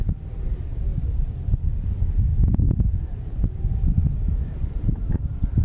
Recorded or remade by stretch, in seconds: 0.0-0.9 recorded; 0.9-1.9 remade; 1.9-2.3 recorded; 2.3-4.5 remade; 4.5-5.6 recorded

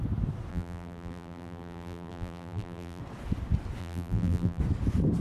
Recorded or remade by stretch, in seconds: 0.0-0.5 recorded; 0.5-3.0 remade; 3.0-3.8 recorded; 3.8-4.6 remade; 4.6-5.2 recorded